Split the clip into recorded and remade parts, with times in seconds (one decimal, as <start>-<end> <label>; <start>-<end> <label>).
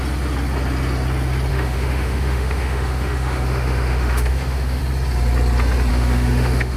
0.0-1.5 recorded; 1.5-4.8 remade; 4.8-5.9 recorded; 5.9-6.8 remade